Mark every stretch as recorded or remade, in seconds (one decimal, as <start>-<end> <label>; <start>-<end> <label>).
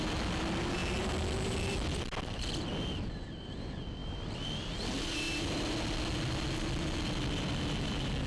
0.0-8.3 recorded